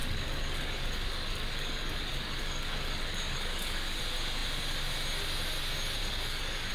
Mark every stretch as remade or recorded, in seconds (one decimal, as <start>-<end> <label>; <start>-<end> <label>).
0.0-4.0 remade; 4.0-6.0 recorded; 6.0-6.7 remade